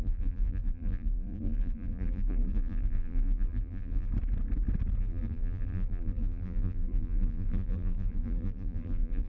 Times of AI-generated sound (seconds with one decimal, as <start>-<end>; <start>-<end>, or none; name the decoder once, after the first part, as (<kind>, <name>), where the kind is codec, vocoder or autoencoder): 0.0-4.1 (vocoder, BigVGAN v2); 5.0-9.3